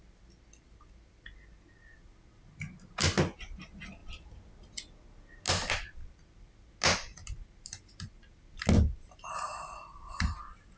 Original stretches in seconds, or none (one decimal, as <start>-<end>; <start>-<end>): 0.0-10.8